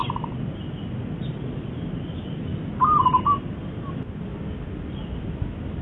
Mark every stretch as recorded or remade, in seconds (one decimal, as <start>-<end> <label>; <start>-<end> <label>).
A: 0.0-5.8 recorded